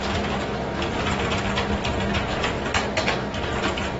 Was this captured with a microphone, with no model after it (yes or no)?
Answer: yes